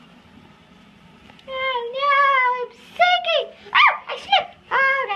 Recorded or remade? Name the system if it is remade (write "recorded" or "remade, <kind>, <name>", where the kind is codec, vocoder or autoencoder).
recorded